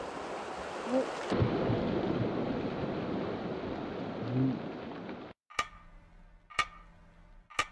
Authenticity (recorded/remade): recorded